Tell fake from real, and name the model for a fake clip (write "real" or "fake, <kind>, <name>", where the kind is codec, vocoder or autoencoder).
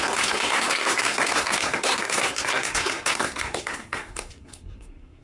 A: fake, codec, SNAC